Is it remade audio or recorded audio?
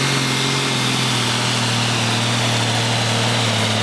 recorded